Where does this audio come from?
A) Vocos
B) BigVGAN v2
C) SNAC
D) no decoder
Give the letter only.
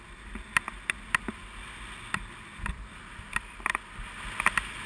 D